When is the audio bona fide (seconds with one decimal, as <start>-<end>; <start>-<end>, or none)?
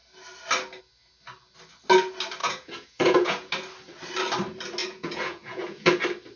0.0-2.4; 3.5-4.8; 6.0-6.4